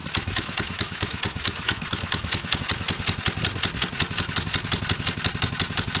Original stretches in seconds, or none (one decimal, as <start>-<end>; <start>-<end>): 2.6-6.0